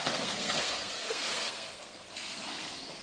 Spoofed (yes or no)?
yes